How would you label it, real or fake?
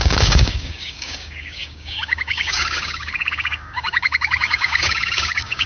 fake